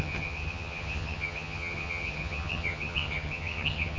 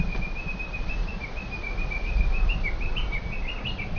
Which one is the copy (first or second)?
first